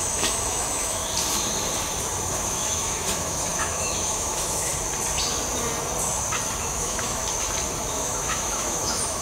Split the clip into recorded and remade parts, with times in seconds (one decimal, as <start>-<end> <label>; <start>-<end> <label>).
0.0-1.0 remade; 1.0-2.3 recorded; 2.3-4.7 remade; 4.7-6.6 recorded; 6.6-7.2 remade; 7.2-7.9 recorded; 7.9-9.2 remade